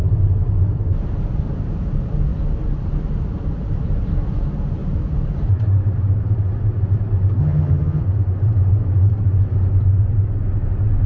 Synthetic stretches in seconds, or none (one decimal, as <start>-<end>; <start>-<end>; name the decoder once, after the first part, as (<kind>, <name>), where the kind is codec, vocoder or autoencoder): 7.4-8.0 (vocoder, HiFi-GAN)